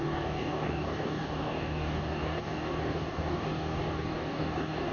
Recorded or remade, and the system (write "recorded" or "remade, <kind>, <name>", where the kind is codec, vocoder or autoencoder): remade, codec, DAC